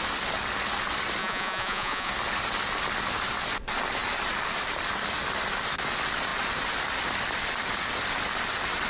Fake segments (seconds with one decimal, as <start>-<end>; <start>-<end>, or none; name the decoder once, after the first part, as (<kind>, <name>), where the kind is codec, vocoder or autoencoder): 1.2-2.1 (vocoder, Vocos)